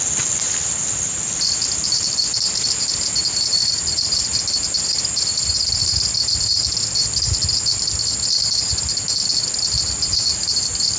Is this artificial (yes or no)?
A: no